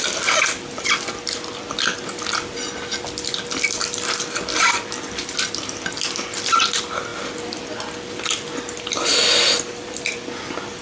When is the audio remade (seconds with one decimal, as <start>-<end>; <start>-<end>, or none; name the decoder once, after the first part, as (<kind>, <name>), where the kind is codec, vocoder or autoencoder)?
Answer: 0.0-10.8 (vocoder, BigVGAN v2)